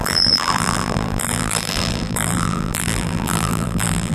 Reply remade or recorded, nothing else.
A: remade